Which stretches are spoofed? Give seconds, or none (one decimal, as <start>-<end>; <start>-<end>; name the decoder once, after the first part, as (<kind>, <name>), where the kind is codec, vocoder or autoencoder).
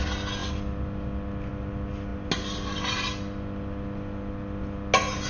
none